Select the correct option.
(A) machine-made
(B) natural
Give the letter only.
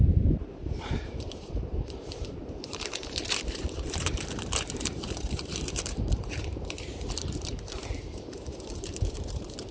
A